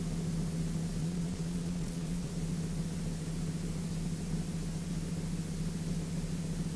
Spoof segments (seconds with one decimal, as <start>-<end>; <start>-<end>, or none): 1.0-2.3